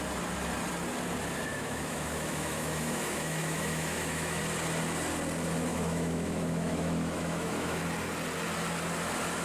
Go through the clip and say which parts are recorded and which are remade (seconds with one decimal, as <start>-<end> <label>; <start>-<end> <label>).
0.0-1.5 recorded; 1.5-4.4 remade; 4.4-5.7 recorded; 5.7-7.8 remade; 7.8-9.4 recorded